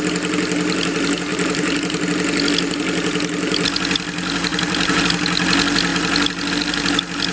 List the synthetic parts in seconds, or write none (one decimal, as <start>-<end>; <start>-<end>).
1.3-2.1; 4.5-5.0